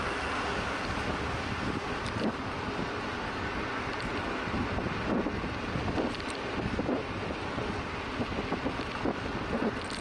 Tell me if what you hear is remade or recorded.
recorded